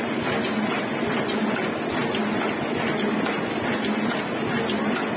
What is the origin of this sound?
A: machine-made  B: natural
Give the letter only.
B